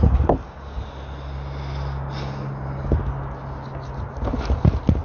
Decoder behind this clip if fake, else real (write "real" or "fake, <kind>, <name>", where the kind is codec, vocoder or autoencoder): real